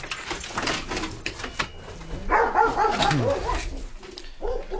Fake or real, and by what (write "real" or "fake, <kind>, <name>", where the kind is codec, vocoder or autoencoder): real